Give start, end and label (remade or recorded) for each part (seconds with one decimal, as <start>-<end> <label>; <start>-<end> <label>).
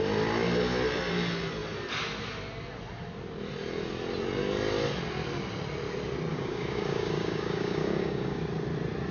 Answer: 0.0-6.3 recorded; 6.3-8.4 remade; 8.4-9.1 recorded